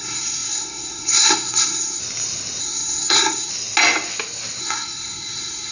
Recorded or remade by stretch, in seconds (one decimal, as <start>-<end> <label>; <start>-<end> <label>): 0.0-2.0 remade; 2.0-2.6 recorded; 2.6-3.5 remade; 3.5-4.6 recorded; 4.6-5.7 remade